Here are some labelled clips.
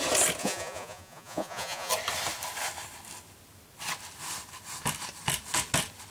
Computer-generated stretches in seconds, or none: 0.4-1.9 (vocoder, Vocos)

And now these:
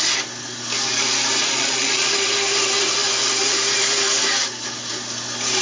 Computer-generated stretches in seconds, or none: 1.4-2.1 (vocoder, Vocos)

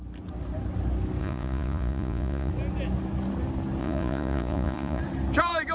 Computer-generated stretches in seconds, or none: 1.2-2.5 (vocoder, Vocos); 3.8-5.0

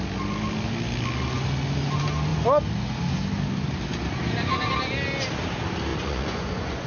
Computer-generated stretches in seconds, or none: 5.9-6.9 (vocoder, Vocos)

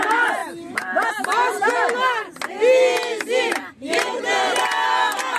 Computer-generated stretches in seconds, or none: none

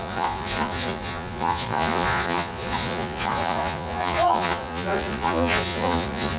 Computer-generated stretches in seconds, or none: 0.0-6.4 (vocoder, Vocos)

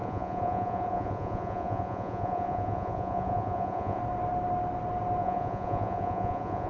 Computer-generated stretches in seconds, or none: 0.0-4.0 (vocoder, Vocos); 5.2-6.7

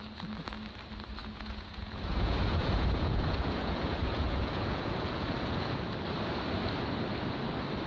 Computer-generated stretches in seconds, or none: 1.2-5.9 (vocoder, Vocos)